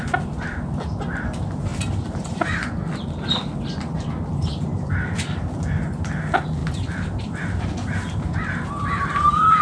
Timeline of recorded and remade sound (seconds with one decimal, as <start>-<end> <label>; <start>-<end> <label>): 0.0-9.6 recorded